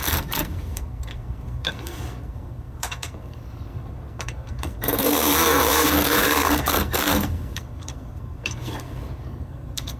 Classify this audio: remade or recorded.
remade